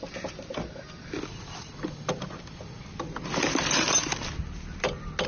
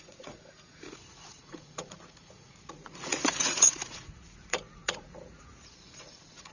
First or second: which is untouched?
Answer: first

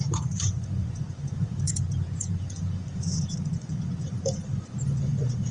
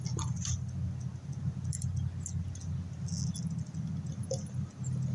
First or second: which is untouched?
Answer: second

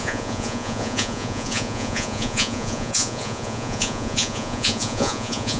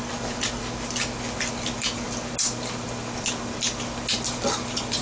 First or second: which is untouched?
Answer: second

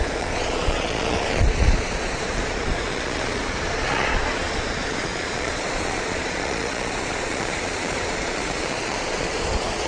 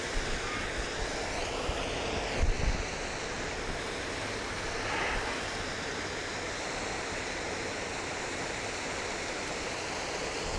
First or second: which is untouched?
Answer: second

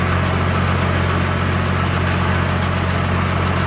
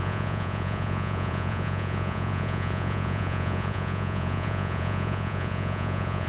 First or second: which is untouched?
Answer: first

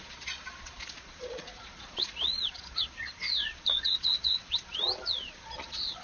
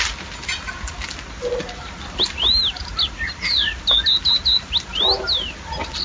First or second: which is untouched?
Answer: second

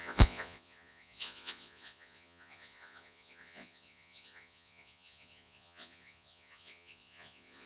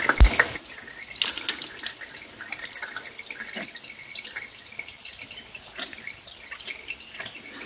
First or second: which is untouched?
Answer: second